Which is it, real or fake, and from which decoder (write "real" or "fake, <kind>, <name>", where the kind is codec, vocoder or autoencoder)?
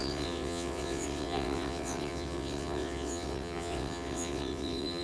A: fake, vocoder, WaveNeXt